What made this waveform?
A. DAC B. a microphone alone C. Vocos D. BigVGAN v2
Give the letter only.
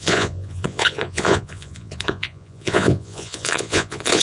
C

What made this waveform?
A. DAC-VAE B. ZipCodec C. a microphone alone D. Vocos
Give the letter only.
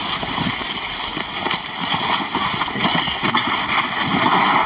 C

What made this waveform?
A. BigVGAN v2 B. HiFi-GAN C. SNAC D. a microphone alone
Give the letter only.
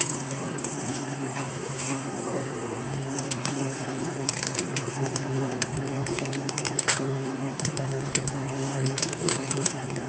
C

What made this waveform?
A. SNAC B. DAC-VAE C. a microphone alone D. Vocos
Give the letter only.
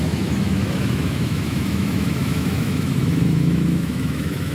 B